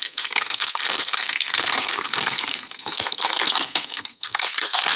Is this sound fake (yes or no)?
yes